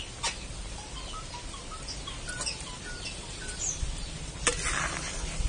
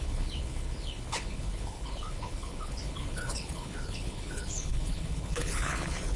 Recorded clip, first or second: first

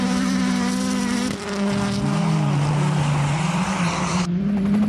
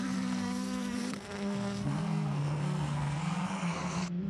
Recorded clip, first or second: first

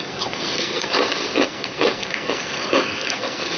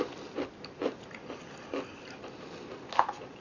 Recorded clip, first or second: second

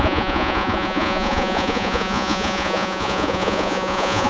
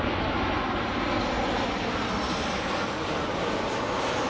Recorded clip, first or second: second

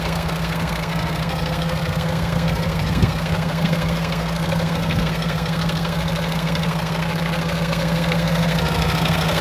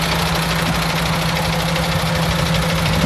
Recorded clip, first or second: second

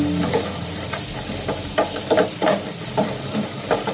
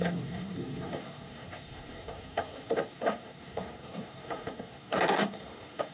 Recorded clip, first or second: first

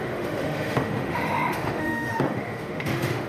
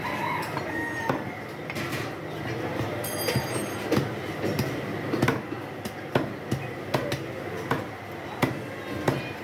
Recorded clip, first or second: second